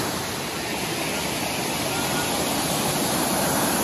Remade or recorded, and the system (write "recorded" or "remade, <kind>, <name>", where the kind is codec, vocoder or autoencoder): recorded